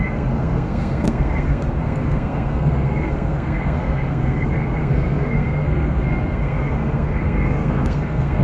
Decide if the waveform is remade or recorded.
remade